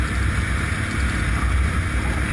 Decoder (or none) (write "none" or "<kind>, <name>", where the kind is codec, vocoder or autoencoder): none